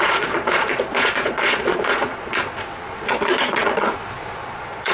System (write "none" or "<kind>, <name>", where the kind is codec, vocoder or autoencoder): vocoder, Vocos